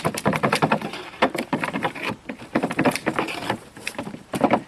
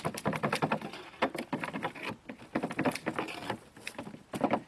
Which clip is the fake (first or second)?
first